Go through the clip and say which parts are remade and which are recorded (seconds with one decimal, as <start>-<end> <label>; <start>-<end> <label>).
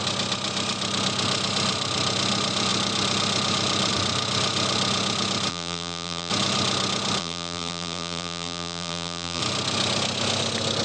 0.0-5.5 recorded; 5.5-6.3 remade; 6.3-7.2 recorded; 7.2-9.4 remade; 9.4-10.8 recorded